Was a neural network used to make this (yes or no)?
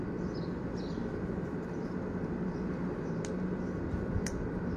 no